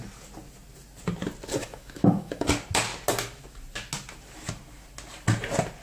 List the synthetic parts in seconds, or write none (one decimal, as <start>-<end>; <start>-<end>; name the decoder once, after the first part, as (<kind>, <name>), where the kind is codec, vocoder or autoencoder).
1.6-2.5 (autoencoder, DAC-VAE)